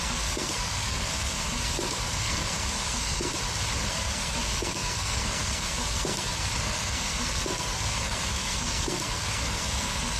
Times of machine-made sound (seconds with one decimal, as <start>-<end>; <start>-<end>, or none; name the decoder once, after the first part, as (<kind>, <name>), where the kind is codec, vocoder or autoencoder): 0.0-3.3 (codec, SNAC); 3.9-10.2